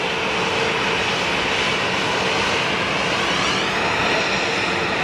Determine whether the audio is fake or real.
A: real